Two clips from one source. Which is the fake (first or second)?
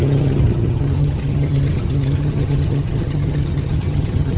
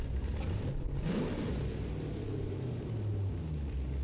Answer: first